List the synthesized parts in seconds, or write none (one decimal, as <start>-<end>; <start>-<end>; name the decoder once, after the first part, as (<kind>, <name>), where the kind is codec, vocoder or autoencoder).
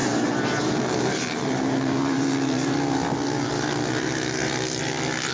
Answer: none